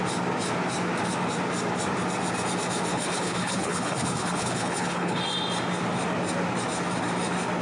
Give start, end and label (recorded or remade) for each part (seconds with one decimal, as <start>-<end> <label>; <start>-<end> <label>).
0.0-2.9 recorded; 2.9-5.2 remade; 5.2-7.6 recorded